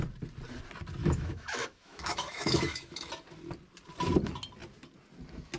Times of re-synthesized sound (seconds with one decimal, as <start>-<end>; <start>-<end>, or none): 1.0-3.1